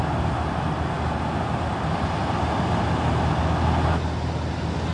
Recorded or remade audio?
recorded